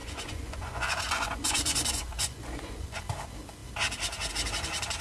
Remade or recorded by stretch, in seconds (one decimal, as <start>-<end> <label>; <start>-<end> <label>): 0.0-3.0 remade; 3.0-5.0 recorded